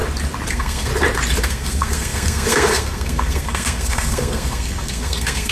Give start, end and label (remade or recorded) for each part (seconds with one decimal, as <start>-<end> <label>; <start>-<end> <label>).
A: 0.0-0.5 recorded; 0.5-0.9 remade; 0.9-1.4 recorded; 1.4-5.5 remade